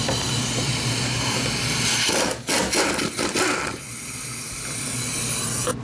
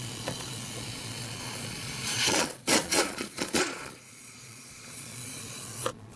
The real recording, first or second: first